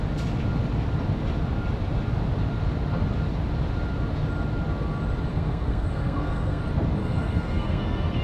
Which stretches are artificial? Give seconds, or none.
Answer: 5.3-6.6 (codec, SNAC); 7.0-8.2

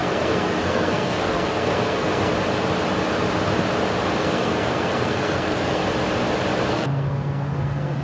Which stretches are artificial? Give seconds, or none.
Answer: 0.0-2.3 (codec, SNAC); 4.2-5.8; 6.7-8.0